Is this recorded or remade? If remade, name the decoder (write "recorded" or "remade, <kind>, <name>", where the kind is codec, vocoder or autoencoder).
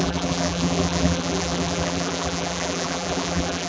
remade, vocoder, BigVGAN v2